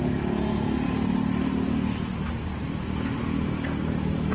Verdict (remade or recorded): recorded